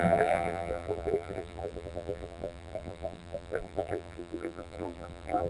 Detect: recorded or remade remade